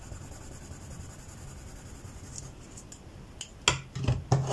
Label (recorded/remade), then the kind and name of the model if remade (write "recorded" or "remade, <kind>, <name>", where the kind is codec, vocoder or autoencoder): recorded